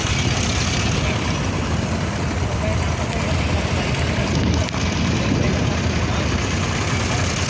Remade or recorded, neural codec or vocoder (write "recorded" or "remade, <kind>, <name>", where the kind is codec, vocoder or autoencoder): recorded